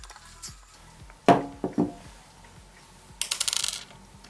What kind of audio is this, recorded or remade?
recorded